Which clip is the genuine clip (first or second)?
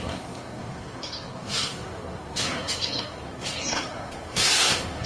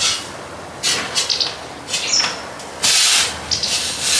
second